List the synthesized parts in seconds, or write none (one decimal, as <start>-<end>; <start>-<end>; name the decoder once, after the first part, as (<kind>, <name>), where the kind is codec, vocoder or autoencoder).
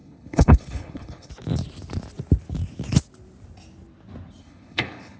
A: 0.0-1.3 (codec, HILCodec); 4.4-5.2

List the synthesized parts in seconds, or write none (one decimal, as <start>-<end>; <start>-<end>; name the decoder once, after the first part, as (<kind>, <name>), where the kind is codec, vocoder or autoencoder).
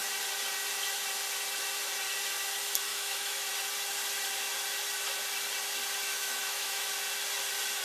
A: 2.9-3.5 (autoencoder, DAC-VAE); 6.0-6.9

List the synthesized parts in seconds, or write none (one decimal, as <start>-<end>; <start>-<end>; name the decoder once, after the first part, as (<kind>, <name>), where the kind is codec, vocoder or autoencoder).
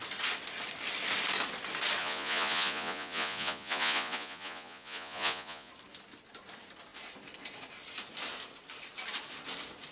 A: 2.0-5.7 (vocoder, Vocos)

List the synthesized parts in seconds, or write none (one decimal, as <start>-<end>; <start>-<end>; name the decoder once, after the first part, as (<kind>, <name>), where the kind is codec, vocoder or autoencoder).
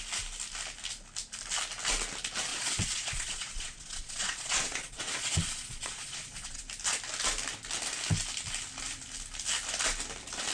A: 2.5-6.6 (vocoder, Vocos)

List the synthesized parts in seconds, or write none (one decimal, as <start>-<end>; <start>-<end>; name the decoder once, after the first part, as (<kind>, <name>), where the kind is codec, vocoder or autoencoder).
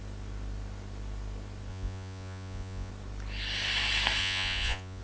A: 1.7-2.9 (vocoder, Vocos); 4.2-5.0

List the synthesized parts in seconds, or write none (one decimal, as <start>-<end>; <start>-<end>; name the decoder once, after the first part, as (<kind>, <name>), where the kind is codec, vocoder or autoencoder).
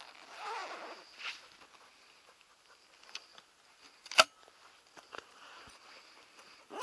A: none